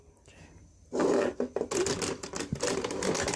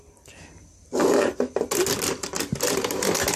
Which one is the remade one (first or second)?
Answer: second